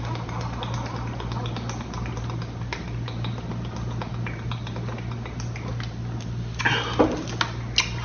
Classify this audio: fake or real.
real